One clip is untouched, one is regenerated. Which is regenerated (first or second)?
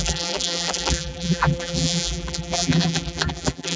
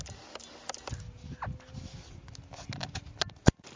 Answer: first